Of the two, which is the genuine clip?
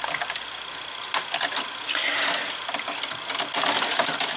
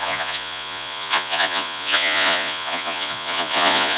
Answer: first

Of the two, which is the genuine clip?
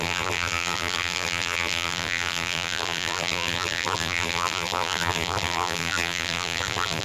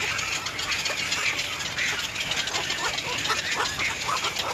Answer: second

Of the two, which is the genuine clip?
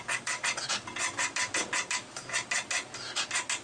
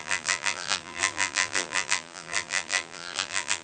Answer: first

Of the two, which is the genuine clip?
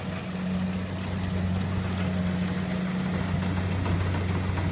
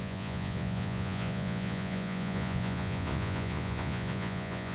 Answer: first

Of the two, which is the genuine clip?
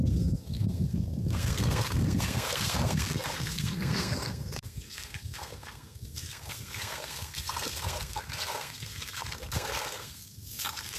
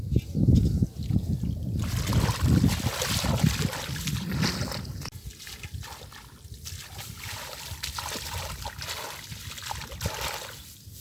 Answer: second